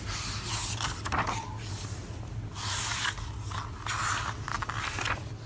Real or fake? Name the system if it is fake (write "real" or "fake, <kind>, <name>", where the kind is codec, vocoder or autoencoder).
real